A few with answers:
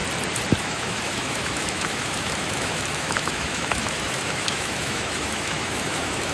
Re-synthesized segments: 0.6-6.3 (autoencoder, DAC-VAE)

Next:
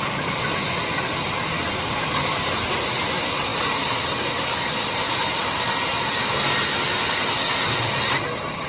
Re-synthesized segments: none

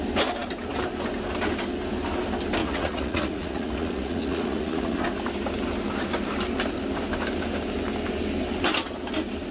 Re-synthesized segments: 2.6-5.0 (vocoder, Vocos)